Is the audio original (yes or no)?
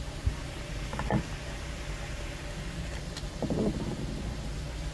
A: yes